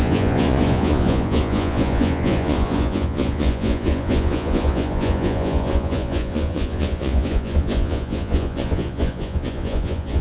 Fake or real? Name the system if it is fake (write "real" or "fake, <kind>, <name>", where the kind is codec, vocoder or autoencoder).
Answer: fake, vocoder, Vocos